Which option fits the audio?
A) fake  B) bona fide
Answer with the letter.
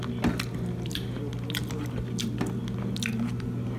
B